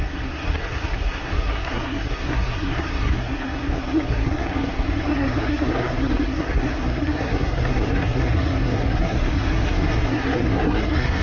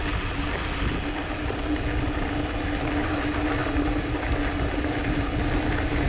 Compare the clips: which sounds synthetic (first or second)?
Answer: first